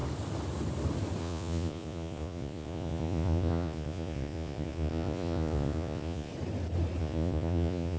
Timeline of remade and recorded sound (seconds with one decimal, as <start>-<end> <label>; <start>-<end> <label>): 0.0-1.2 recorded; 1.2-6.3 remade; 6.3-7.0 recorded; 7.0-8.0 remade